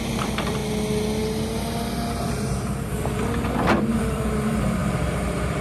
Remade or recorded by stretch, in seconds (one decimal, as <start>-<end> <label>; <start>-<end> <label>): 0.0-0.6 remade; 0.6-4.0 recorded; 4.0-5.6 remade